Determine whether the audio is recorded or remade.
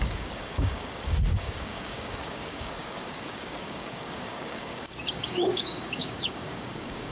remade